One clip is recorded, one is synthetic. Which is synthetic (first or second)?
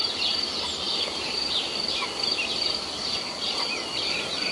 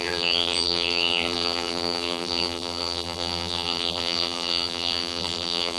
second